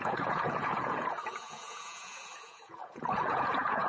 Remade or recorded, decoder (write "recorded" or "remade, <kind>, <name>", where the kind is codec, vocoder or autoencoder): remade, vocoder, Vocos